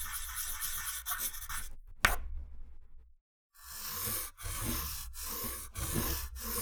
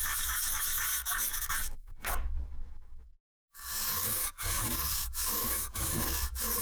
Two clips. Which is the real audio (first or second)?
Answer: first